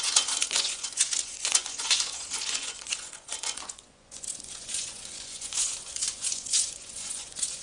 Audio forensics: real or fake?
fake